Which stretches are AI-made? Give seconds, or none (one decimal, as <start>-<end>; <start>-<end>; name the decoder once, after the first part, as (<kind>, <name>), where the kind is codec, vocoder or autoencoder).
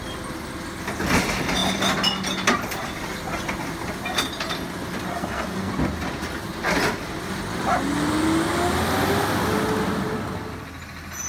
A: 5.1-5.7 (codec, SNAC)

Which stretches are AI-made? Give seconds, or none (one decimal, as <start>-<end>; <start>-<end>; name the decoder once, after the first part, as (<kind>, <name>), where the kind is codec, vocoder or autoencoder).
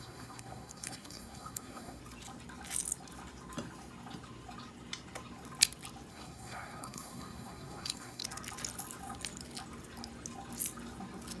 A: 0.0-2.0 (codec, SNAC); 6.1-8.2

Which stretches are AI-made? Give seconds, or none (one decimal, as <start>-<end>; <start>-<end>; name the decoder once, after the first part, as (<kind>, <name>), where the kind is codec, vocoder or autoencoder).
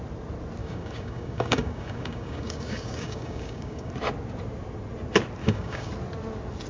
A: 0.6-3.9 (codec, DAC); 5.4-5.9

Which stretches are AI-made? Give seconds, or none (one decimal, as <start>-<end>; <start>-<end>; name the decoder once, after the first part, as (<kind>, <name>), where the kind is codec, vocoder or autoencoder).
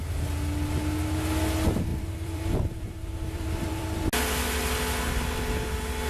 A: 1.9-4.0 (vocoder, BigVGAN v2)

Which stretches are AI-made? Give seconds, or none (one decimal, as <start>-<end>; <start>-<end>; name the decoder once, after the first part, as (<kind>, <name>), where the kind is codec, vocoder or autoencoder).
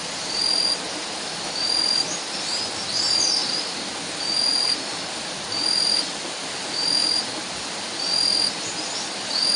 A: none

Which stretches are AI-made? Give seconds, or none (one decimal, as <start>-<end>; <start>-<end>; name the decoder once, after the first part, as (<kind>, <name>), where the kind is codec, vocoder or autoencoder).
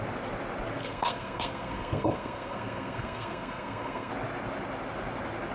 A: 0.8-4.1 (codec, SNAC)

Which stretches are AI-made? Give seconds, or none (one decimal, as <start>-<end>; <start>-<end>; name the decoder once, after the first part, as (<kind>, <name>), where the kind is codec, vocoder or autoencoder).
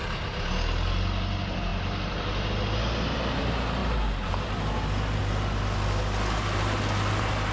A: none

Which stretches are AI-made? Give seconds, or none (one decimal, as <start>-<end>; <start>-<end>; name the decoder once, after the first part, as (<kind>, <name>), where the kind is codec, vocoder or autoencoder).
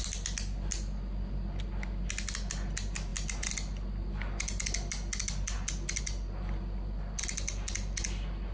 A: none